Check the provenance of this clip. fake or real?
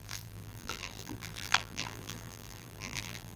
fake